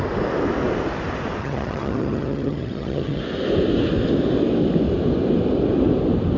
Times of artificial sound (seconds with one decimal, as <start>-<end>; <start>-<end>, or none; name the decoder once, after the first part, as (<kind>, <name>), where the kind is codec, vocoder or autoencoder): 1.4-3.2 (vocoder, HiFi-GAN)

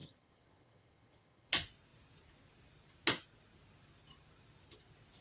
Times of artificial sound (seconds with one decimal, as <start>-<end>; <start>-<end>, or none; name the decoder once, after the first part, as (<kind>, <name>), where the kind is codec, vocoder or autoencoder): 0.0-1.5 (vocoder, HiFi-GAN)

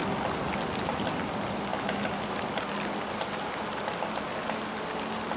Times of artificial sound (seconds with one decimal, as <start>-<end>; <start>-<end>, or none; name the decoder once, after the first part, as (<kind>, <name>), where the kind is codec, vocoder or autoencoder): none